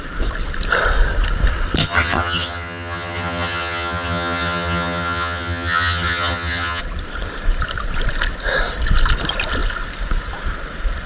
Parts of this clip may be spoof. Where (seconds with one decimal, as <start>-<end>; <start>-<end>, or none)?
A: 1.8-6.8